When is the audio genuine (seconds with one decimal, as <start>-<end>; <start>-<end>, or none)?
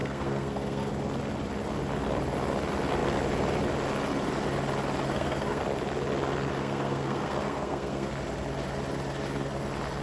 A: 0.9-5.1; 5.6-6.5; 8.1-10.0